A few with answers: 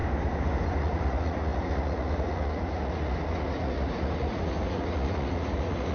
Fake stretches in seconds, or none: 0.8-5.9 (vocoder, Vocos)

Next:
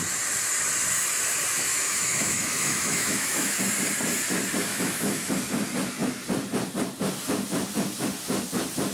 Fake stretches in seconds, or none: 1.7-3.6 (autoencoder, DAC-VAE); 4.7-5.3

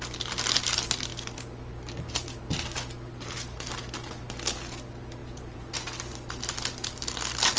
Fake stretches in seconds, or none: 5.2-5.7 (vocoder, Vocos)